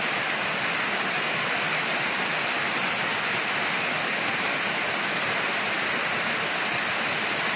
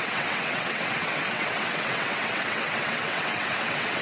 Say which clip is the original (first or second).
first